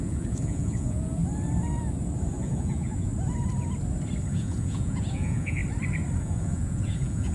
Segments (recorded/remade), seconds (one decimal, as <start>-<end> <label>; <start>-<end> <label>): 0.0-1.2 remade; 1.2-2.4 recorded; 2.4-3.1 remade; 3.1-4.3 recorded; 4.3-5.6 remade; 5.6-6.2 recorded; 6.2-7.3 remade